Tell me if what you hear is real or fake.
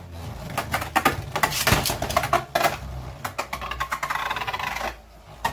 real